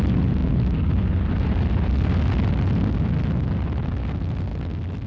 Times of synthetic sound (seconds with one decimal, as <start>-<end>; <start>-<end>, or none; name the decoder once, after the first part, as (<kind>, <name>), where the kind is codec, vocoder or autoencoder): none